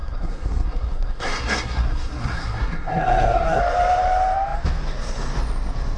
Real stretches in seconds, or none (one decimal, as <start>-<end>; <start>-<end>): 3.6-6.0

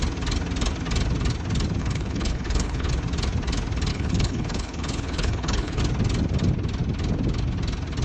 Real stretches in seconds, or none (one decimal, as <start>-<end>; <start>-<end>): 0.0-1.8; 2.9-3.9; 5.8-8.0

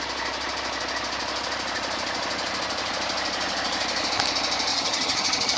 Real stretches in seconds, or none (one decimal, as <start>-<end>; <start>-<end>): 0.0-4.7

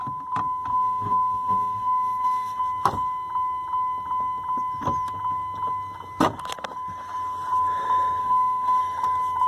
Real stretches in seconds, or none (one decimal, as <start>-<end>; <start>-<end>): 0.0-0.7; 2.6-8.2; 8.8-9.5

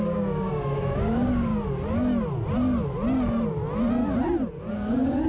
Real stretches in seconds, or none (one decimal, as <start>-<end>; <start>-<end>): 1.5-4.7

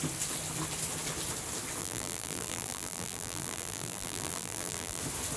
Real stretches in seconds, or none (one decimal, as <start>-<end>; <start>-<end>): 0.0-1.8; 5.0-5.4

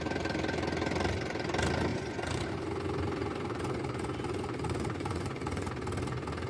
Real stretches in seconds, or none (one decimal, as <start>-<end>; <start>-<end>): 0.0-1.9; 2.4-3.2; 5.7-6.5

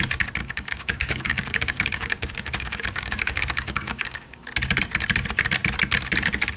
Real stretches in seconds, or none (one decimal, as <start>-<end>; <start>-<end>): 0.0-0.4; 4.4-6.6